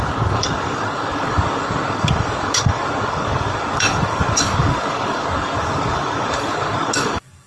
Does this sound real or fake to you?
fake